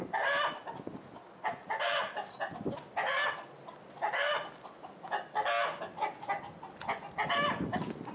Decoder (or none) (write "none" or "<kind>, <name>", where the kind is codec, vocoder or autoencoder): none